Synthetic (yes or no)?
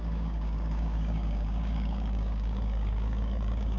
yes